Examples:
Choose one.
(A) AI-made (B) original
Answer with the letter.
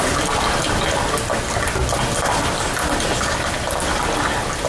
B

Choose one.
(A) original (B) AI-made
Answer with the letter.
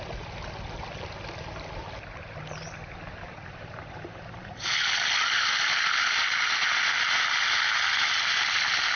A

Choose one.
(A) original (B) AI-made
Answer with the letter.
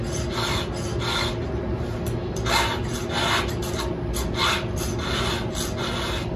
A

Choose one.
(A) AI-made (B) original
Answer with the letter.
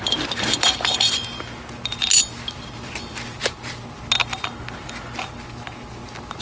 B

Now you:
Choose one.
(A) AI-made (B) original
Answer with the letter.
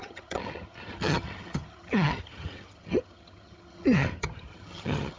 A